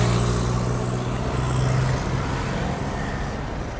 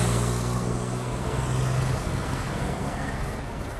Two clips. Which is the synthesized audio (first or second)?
second